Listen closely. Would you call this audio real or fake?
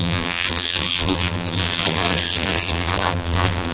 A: fake